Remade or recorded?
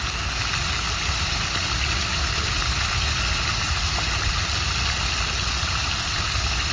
recorded